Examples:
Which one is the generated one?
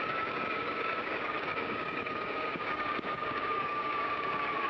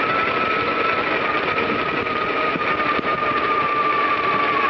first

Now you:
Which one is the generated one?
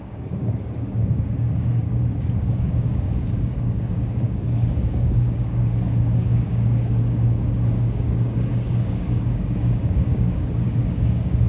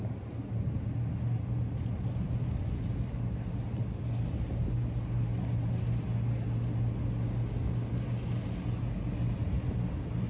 first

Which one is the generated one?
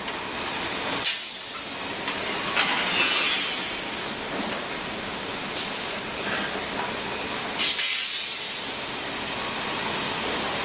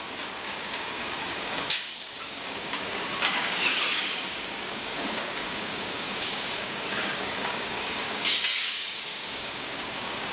second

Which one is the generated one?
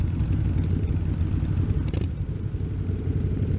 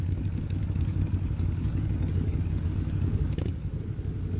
second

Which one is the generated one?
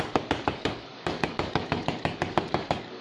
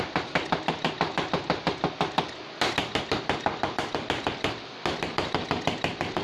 first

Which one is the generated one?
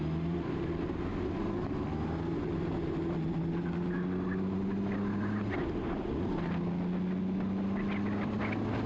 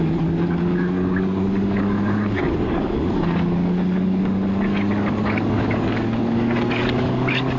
second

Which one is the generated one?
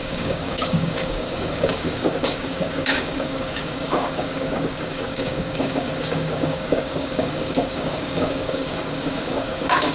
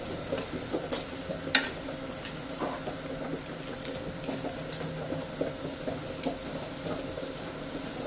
first